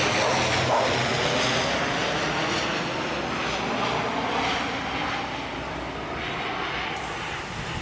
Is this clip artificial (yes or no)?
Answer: no